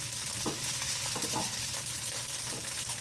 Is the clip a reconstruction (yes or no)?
no